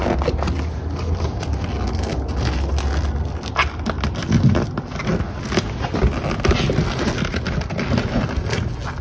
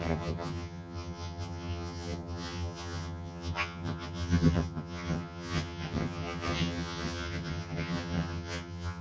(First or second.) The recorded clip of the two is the first